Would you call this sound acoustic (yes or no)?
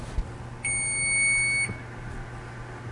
yes